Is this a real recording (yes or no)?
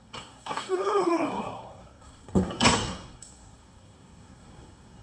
no